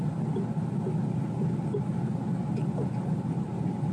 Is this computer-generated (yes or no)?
no